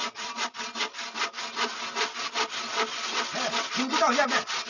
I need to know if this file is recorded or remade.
recorded